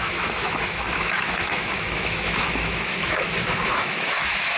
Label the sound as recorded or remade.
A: remade